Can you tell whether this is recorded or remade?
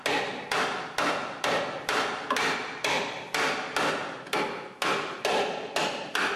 recorded